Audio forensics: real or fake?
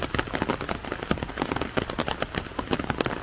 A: real